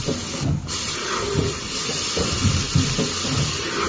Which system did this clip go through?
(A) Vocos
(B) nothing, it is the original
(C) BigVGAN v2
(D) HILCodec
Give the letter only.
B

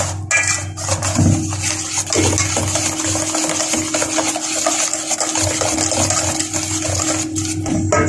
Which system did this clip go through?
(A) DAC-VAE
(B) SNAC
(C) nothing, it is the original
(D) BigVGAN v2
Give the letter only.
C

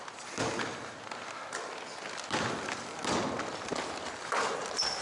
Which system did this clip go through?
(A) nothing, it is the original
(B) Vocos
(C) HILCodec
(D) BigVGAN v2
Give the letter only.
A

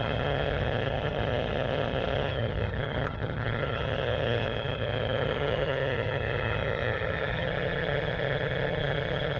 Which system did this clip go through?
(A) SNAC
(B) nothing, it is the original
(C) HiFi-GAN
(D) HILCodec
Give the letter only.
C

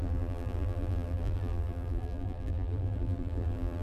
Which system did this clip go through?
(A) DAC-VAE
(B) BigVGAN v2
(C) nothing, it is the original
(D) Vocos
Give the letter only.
B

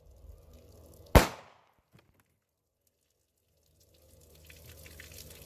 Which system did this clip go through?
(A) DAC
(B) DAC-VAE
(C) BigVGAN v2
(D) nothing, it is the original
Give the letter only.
D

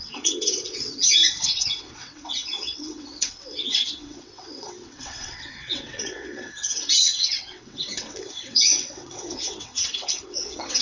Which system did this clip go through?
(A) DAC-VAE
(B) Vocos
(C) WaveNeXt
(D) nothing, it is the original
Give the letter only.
C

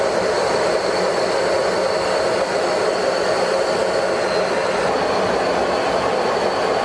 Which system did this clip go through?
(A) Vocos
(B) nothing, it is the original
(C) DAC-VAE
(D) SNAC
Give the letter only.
B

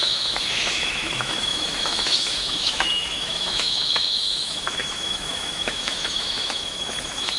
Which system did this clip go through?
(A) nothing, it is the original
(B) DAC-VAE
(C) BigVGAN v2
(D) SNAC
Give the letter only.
B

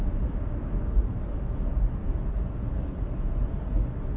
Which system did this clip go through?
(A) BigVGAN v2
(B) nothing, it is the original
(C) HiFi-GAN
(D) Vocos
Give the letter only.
B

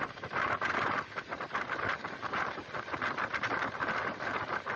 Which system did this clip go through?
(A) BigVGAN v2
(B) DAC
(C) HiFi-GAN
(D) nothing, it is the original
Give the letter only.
D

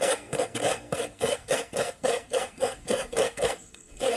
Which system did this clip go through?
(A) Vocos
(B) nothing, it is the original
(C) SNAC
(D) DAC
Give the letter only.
C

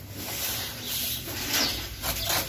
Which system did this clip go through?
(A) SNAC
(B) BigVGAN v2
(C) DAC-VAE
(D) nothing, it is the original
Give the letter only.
D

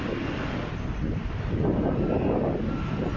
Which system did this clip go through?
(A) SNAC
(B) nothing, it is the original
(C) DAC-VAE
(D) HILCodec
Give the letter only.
B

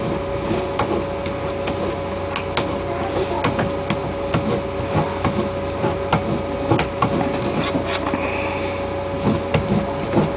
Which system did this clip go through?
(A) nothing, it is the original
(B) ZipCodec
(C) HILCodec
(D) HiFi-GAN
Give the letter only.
A